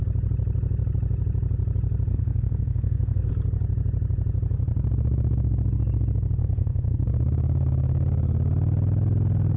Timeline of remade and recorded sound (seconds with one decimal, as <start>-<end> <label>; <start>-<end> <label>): 0.0-2.1 recorded; 2.1-3.3 remade; 3.3-6.4 recorded; 6.4-6.9 remade; 6.9-9.6 recorded